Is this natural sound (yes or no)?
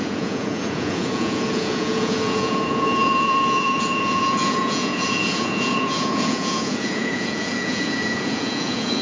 no